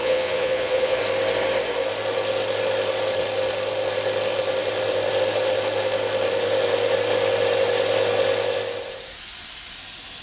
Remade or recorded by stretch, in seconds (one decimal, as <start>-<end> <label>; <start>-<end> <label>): 0.0-1.0 remade; 1.0-10.2 recorded